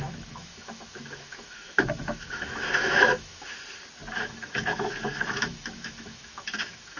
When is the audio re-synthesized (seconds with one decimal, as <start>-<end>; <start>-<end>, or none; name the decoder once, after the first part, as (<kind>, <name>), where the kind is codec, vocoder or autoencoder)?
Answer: 0.0-3.5 (autoencoder, DAC-VAE); 4.1-7.0